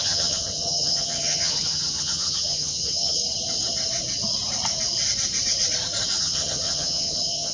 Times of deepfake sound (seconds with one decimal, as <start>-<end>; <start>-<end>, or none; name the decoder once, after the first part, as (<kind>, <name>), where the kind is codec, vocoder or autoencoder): 0.0-3.2 (vocoder, HiFi-GAN); 6.2-7.5